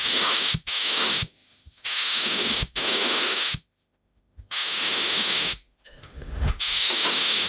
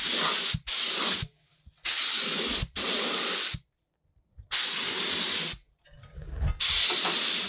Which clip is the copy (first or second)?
first